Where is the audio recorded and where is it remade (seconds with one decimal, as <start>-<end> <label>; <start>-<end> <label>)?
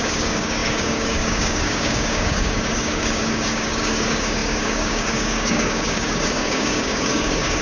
0.0-7.6 remade